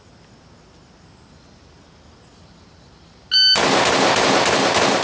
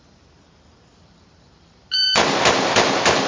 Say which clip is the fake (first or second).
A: second